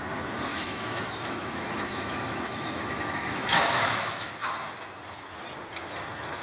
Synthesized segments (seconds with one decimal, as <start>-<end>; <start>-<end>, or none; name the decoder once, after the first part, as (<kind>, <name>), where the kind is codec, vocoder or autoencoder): 0.5-4.3 (autoencoder, DAC-VAE)